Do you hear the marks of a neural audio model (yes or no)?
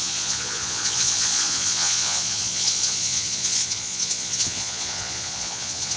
yes